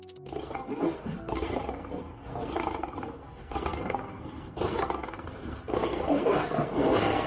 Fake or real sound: fake